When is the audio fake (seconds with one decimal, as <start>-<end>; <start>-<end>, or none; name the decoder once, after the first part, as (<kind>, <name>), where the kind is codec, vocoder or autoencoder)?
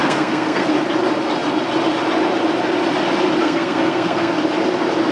0.0-0.7 (codec, SNAC); 3.4-4.3